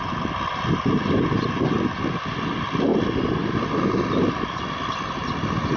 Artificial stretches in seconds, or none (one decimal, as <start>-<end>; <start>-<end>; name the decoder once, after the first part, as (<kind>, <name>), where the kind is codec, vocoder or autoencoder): none